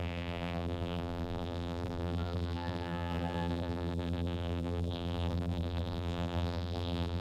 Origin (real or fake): fake